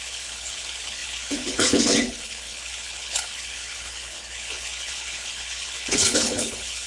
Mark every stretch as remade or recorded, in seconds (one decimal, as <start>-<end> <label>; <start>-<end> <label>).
0.0-6.9 remade